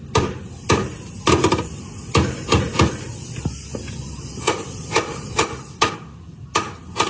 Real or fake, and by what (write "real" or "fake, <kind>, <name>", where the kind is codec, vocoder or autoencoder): real